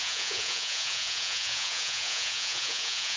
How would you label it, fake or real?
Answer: fake